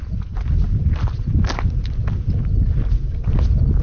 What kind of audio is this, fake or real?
real